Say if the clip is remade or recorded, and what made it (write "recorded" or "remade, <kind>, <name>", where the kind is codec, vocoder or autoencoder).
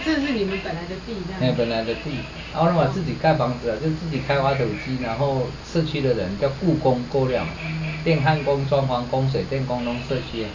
recorded